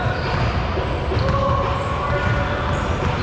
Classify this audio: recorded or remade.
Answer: recorded